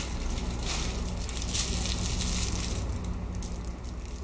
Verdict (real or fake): real